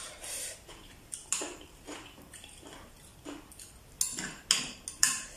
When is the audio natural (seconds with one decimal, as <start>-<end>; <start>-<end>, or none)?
3.1-4.9